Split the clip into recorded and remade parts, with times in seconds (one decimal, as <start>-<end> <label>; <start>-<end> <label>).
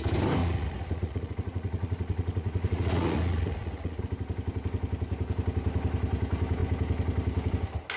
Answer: 0.0-0.4 recorded; 0.4-4.0 remade; 4.0-8.0 recorded